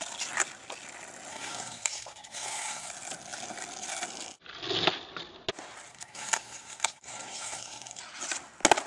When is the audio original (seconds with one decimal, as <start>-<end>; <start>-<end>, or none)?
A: 0.0-1.3; 2.9-5.9; 8.0-8.9